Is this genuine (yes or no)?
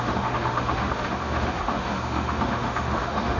no